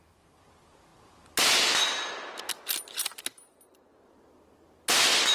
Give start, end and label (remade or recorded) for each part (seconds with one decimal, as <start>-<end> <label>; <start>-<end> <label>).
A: 0.0-5.3 recorded